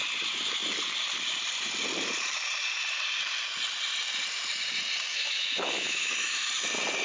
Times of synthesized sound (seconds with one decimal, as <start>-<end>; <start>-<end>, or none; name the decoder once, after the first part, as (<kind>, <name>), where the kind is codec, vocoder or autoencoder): 5.1-6.5 (autoencoder, DAC-VAE)